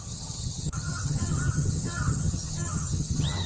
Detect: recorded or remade remade